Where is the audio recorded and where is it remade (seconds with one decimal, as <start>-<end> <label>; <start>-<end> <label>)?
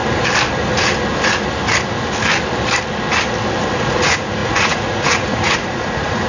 0.0-3.8 recorded; 3.8-6.3 remade